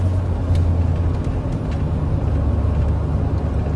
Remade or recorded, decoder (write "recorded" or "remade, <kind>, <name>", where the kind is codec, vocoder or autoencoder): recorded